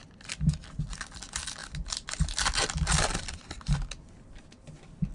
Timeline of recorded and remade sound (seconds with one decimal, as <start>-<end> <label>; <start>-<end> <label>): 0.0-5.1 recorded